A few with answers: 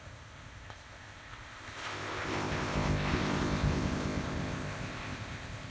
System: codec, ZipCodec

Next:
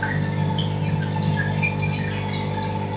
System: none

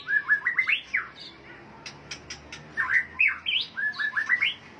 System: none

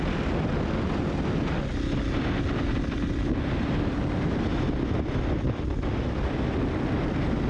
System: none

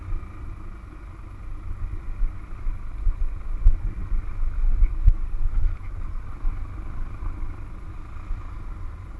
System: none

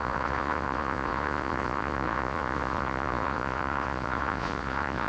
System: vocoder, Vocos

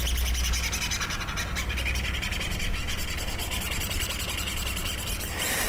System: none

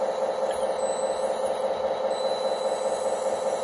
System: none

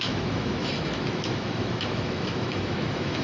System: autoencoder, DAC-VAE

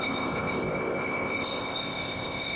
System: codec, ZipCodec